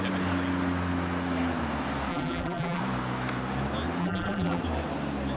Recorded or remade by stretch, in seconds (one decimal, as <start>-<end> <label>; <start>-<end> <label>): 0.0-2.1 recorded; 2.1-2.8 remade; 2.8-4.0 recorded; 4.0-4.6 remade; 4.6-5.4 recorded